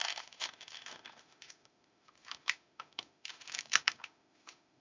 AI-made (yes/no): yes